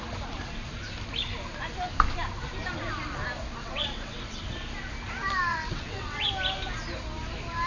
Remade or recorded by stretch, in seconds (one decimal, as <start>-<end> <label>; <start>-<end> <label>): 0.0-3.6 recorded; 3.6-4.4 remade; 4.4-5.5 recorded; 5.5-6.3 remade; 6.3-7.7 recorded